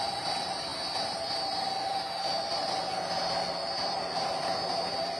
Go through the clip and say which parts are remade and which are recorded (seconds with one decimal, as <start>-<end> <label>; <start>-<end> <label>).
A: 0.0-5.2 recorded